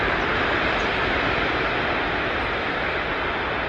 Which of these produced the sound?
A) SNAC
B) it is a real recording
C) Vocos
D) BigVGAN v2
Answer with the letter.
B